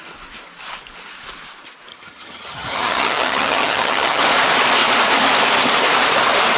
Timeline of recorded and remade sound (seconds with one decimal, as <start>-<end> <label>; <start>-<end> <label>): 0.0-1.9 recorded; 1.9-4.2 remade; 4.2-6.6 recorded